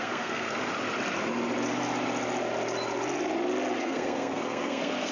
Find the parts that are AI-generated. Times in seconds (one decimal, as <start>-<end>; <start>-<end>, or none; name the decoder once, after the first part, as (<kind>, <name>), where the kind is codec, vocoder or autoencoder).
0.0-0.7 (codec, SNAC); 3.8-5.1